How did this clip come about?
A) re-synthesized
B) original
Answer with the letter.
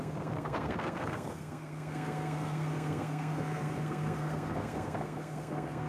A